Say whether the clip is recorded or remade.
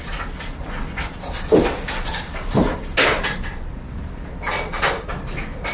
recorded